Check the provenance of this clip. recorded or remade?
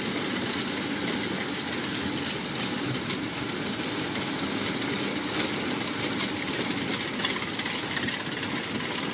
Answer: recorded